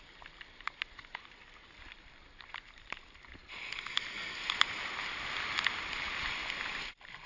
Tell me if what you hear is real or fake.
real